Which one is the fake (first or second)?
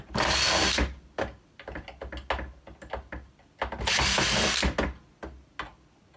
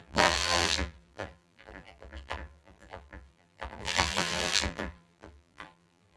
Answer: second